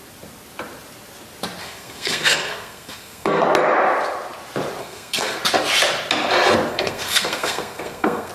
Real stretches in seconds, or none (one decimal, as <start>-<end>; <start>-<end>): 0.0-1.6; 3.4-4.8; 5.4-6.7